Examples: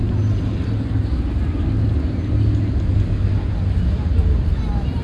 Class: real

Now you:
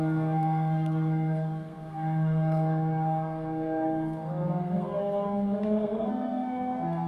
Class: fake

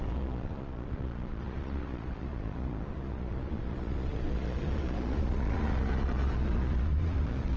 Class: fake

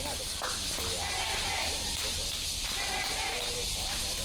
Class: real